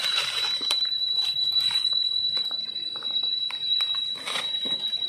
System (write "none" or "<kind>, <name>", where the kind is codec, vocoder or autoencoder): vocoder, BigVGAN v2